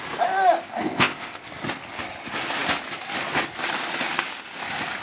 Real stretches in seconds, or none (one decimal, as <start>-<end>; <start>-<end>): 0.0-0.7; 1.5-5.0